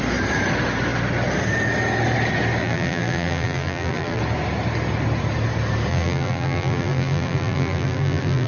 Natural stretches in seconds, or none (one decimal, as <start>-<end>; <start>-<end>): 0.0-2.6; 4.2-5.9